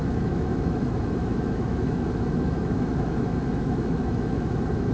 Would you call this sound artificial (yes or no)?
yes